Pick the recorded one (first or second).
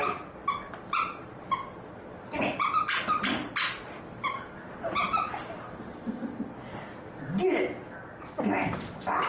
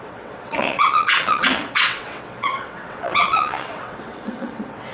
first